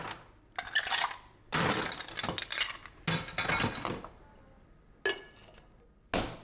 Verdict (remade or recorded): recorded